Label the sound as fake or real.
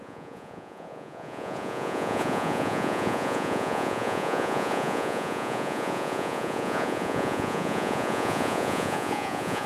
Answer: fake